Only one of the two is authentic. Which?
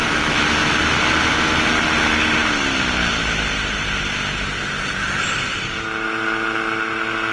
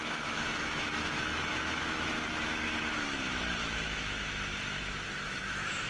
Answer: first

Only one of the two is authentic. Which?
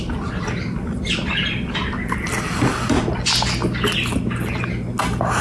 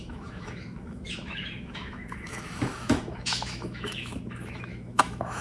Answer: first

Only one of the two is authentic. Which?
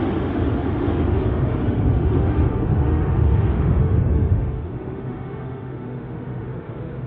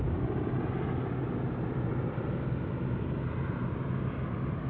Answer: second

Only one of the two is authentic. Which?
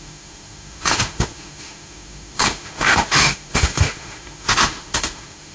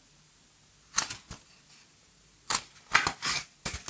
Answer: second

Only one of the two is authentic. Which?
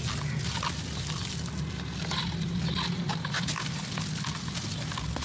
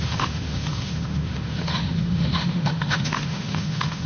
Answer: first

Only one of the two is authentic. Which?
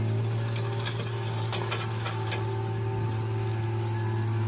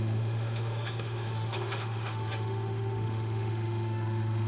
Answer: first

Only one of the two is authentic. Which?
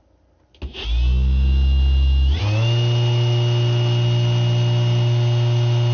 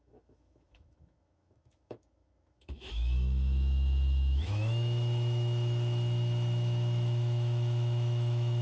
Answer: first